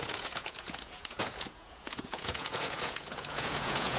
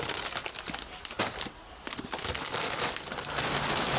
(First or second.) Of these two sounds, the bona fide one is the second